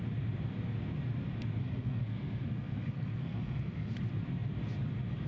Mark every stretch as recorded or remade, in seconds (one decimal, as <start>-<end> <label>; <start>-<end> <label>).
0.0-1.6 recorded; 1.6-4.0 remade; 4.0-5.3 recorded